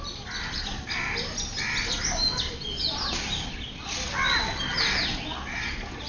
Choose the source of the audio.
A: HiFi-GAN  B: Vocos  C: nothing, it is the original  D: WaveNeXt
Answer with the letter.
C